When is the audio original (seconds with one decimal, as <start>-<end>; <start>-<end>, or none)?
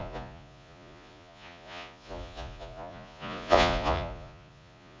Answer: none